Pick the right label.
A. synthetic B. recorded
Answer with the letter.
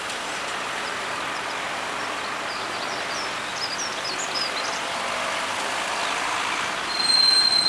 B